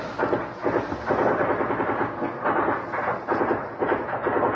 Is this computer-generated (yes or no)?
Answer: no